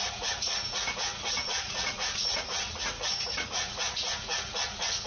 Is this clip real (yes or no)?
no